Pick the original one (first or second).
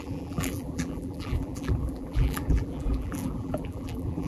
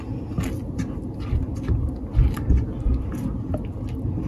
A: second